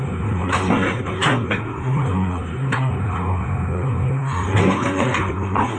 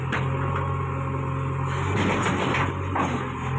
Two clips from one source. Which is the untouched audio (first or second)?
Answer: second